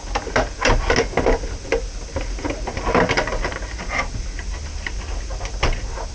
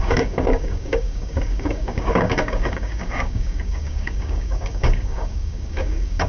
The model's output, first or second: second